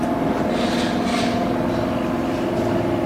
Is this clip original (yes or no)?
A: yes